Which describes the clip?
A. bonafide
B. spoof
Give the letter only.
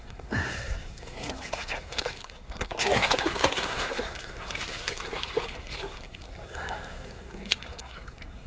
B